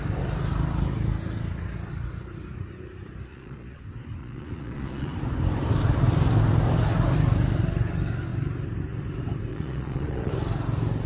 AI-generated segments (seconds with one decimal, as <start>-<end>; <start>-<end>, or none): 3.3-3.8; 4.2-5.1; 9.5-10.3